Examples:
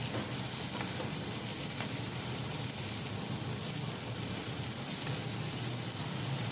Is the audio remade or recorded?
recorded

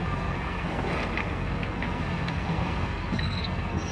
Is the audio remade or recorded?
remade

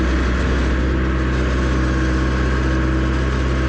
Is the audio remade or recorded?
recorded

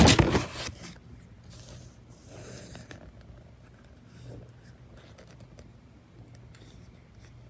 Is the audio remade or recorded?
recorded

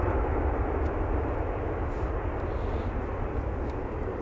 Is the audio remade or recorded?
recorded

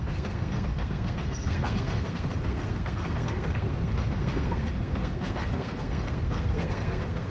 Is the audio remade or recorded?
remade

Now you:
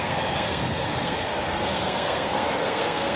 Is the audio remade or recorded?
remade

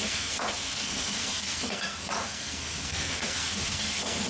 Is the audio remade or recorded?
remade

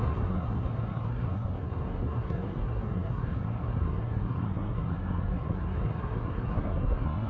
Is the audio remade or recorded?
remade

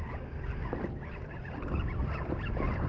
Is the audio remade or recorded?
recorded